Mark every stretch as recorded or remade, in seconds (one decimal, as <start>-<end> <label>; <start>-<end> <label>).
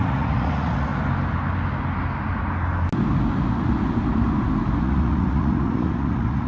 0.0-0.9 remade; 0.9-4.8 recorded; 4.8-6.5 remade